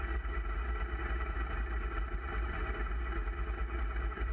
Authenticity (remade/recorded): recorded